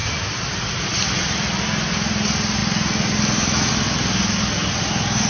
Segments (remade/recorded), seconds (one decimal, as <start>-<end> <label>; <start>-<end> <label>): 0.0-5.3 recorded